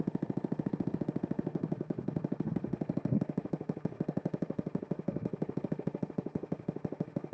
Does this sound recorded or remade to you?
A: remade